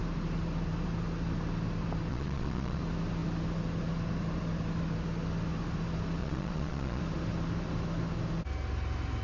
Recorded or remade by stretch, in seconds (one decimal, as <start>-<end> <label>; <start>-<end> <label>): 0.0-2.1 recorded; 2.1-2.8 remade; 2.8-6.2 recorded; 6.2-7.0 remade; 7.0-9.2 recorded